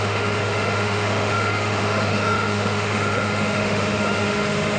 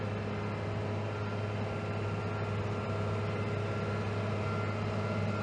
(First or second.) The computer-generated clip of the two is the first